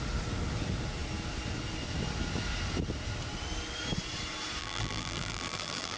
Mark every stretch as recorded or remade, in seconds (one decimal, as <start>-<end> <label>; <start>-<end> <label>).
0.0-4.6 recorded; 4.6-6.0 remade